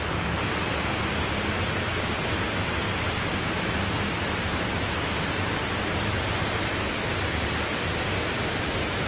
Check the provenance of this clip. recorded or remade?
recorded